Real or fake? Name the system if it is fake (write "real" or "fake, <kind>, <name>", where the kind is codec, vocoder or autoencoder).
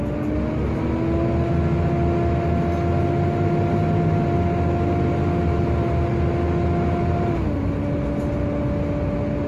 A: real